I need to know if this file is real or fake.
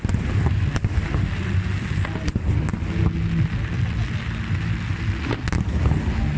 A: real